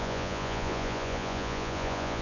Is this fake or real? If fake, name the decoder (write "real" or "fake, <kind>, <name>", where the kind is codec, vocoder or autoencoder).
fake, vocoder, Vocos